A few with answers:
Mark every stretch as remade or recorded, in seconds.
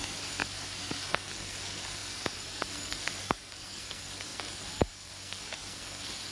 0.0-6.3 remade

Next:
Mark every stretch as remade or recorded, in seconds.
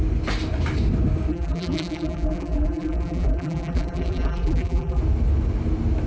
0.0-1.3 recorded; 1.3-5.0 remade; 5.0-6.1 recorded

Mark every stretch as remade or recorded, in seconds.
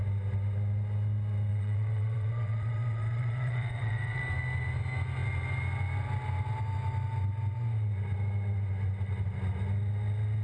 0.0-1.5 recorded; 1.5-4.2 remade; 4.2-10.4 recorded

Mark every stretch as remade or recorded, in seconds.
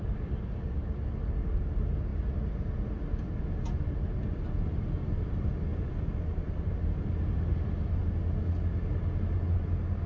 0.0-10.1 recorded